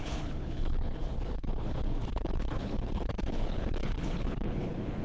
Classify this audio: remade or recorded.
remade